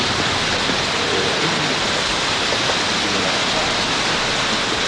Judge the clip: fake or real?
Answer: real